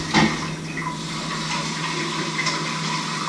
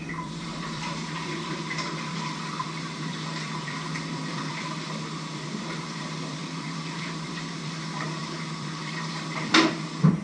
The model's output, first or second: second